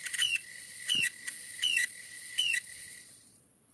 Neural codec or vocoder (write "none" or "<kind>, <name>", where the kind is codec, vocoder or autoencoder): vocoder, Vocos